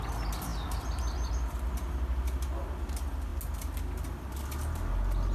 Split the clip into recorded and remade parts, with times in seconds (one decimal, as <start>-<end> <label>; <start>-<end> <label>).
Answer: 0.0-5.3 recorded